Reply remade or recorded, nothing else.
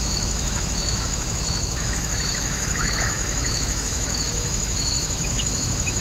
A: remade